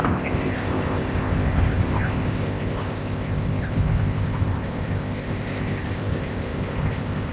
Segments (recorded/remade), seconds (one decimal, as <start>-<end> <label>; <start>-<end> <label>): 0.0-7.3 remade